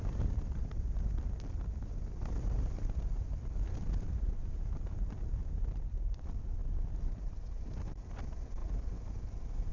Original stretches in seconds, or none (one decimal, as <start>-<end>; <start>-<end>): 0.6-3.1; 6.6-8.2